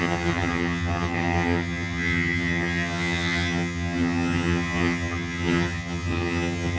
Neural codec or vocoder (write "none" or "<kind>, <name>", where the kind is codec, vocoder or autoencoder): vocoder, HiFi-GAN